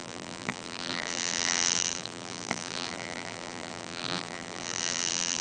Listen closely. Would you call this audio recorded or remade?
remade